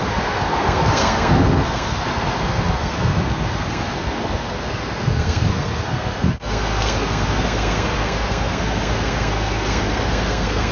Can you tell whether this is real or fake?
fake